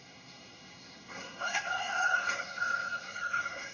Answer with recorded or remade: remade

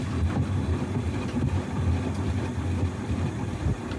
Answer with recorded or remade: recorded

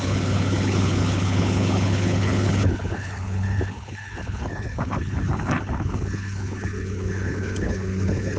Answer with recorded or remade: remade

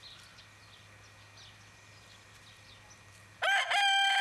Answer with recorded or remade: recorded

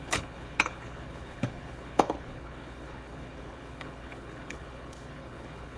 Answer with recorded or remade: remade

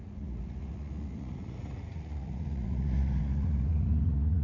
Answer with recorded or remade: remade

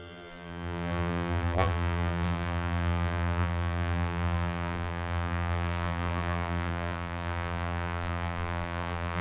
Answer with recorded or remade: remade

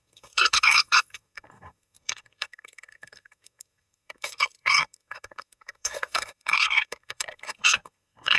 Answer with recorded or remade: remade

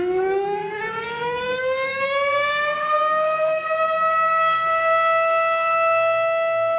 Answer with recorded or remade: remade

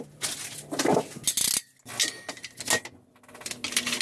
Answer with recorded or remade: recorded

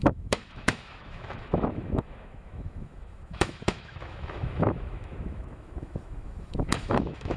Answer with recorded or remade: remade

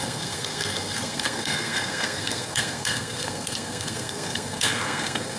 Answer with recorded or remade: remade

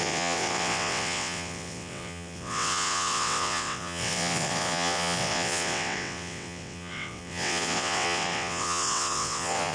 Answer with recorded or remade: remade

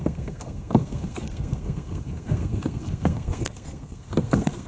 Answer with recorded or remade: remade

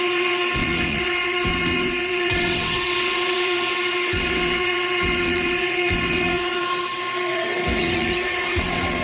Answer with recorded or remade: remade